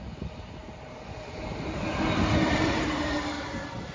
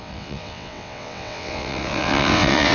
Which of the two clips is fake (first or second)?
second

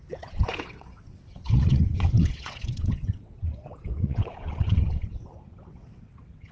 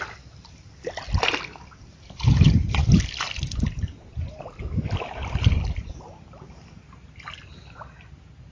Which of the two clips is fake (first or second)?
first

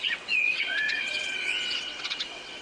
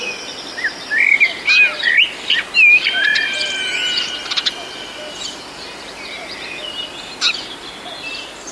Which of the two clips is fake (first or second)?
first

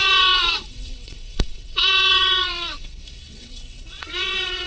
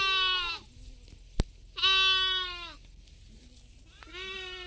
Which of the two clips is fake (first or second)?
first